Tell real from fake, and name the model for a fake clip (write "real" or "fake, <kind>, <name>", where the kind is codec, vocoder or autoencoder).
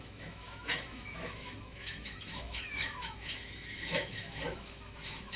fake, autoencoder, DAC-VAE